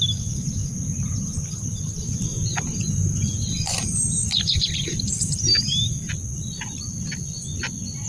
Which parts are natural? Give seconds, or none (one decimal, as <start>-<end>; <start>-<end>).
0.0-2.3; 6.1-8.1